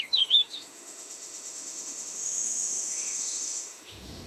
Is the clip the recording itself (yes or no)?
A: no